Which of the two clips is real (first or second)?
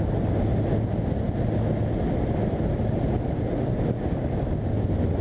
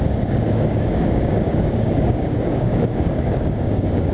first